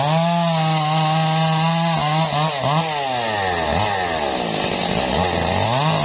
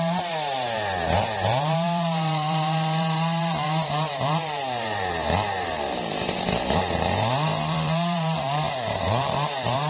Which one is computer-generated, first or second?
second